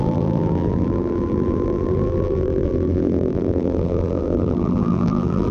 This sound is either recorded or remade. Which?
remade